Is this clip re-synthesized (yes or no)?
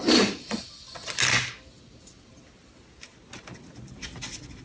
no